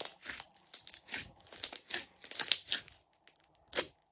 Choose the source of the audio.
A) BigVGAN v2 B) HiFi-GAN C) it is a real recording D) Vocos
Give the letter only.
C